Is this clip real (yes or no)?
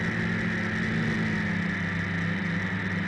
yes